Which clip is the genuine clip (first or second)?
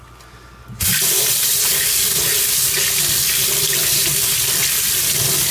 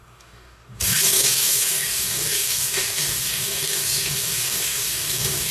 first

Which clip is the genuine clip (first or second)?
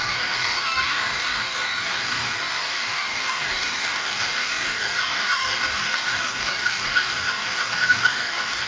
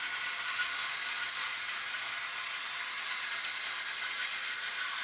second